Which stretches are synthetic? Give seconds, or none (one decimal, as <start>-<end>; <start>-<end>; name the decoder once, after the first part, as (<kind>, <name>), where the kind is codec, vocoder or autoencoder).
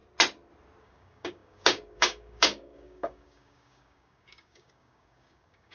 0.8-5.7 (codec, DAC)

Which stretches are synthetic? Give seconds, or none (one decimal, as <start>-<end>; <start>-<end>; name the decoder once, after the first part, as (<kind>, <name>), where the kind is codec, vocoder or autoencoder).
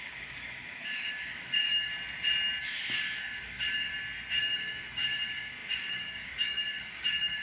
0.0-1.9 (codec, DAC); 2.6-3.9; 4.4-7.4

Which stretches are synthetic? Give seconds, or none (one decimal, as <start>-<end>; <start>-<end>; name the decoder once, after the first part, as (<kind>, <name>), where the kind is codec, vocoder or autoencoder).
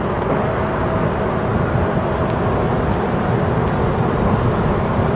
none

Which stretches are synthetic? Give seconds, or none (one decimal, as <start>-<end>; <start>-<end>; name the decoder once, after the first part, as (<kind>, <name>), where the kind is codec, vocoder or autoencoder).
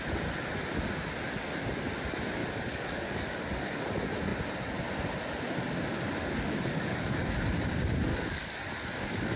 2.4-3.4 (codec, DAC); 6.2-7.3; 8.1-9.4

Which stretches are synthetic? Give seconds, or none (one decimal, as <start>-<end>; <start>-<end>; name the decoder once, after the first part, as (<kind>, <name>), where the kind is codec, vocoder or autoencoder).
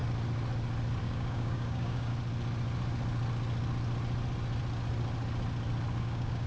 1.0-2.1 (codec, DAC); 6.0-6.5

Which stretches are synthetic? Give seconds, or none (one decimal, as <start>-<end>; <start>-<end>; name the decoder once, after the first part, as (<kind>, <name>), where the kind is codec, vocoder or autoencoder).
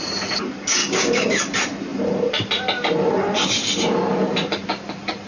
0.8-1.3 (codec, DAC)